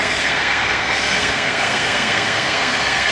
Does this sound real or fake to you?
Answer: fake